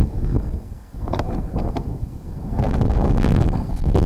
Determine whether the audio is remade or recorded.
remade